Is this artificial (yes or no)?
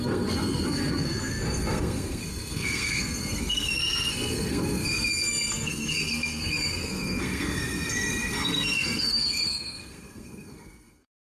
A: yes